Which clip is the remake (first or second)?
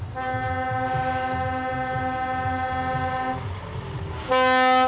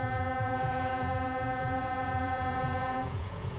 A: second